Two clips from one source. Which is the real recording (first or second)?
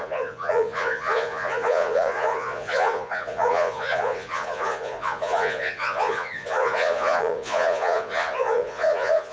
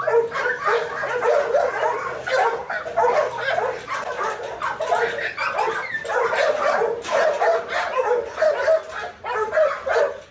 second